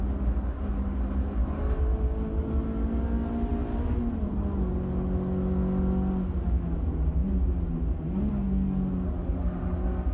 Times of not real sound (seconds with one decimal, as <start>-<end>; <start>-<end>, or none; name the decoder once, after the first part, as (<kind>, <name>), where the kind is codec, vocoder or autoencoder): none